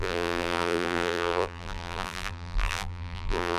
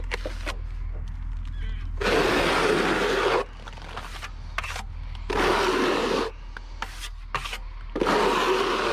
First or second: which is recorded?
second